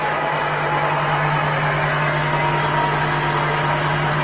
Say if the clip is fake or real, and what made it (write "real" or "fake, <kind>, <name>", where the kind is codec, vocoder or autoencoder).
real